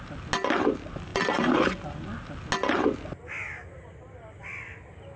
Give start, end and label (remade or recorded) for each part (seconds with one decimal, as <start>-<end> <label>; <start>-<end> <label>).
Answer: 0.0-5.2 recorded